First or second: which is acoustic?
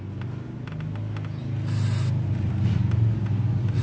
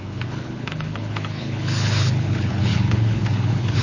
first